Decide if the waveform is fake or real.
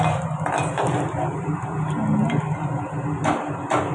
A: real